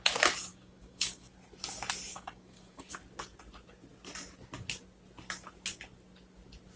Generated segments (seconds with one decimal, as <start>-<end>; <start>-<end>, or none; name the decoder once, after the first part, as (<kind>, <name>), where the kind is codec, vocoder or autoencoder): 0.5-1.3 (codec, DAC); 2.1-2.9